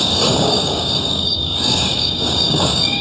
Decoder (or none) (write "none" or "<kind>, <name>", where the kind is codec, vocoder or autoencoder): codec, DAC